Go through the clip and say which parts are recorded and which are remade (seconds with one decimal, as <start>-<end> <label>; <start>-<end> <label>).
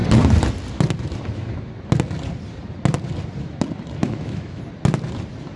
0.0-4.0 recorded; 4.0-4.6 remade; 4.6-5.6 recorded